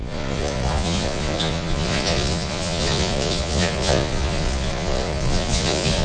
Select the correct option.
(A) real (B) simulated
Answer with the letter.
B